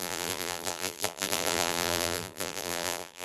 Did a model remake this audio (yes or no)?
yes